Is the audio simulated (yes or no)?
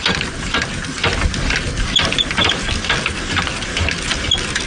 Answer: no